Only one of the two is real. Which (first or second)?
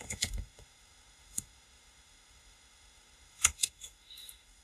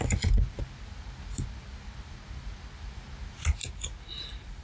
second